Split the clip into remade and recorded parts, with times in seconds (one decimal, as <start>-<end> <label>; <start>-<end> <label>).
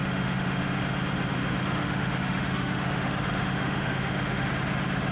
0.0-0.8 remade; 0.8-1.4 recorded; 1.4-4.5 remade; 4.5-5.1 recorded